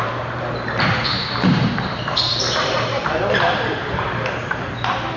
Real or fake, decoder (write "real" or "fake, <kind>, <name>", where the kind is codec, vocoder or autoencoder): fake, vocoder, BigVGAN v2